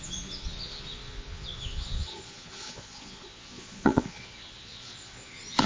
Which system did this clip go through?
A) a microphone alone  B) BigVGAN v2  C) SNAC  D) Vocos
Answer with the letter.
D